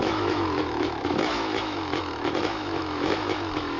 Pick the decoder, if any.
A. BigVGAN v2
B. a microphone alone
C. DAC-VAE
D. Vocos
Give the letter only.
C